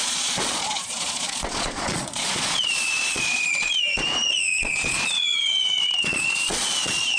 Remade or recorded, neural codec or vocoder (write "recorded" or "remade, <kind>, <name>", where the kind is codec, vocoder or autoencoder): remade, vocoder, Vocos